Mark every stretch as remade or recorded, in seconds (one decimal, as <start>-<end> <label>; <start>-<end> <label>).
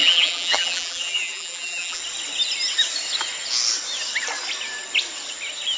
0.0-2.0 remade; 2.0-5.8 recorded